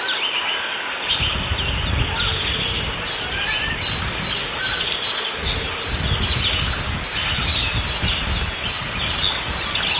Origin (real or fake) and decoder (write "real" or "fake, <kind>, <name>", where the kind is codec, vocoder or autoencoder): real